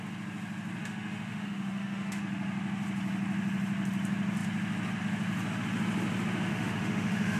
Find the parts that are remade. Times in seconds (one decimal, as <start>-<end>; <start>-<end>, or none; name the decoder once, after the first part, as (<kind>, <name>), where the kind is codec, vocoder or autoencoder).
0.8-2.2 (autoencoder, DAC-VAE); 6.5-7.4